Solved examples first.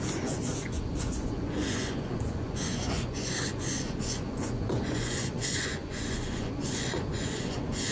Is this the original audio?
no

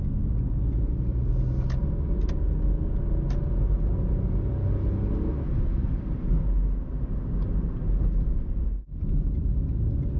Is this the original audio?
yes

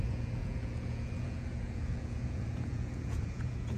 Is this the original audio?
no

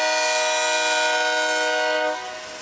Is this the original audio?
yes